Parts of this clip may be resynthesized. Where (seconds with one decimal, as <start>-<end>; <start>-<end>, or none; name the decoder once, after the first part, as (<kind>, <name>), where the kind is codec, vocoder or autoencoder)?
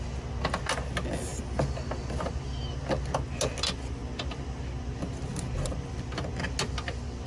none